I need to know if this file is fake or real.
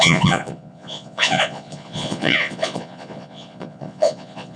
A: fake